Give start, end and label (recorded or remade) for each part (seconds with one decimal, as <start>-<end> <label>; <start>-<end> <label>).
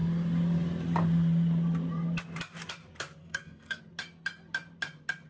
0.0-3.2 recorded; 3.2-3.8 remade; 3.8-5.3 recorded